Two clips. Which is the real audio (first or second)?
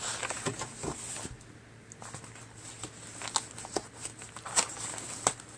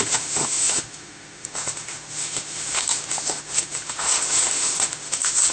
first